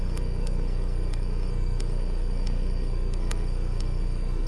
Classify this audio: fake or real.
fake